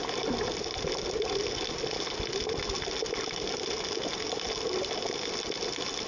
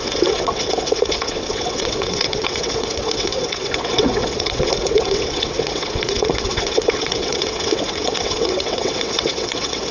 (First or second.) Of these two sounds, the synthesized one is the second